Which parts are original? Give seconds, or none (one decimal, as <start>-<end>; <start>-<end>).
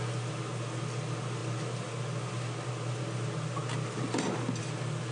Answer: 0.0-5.1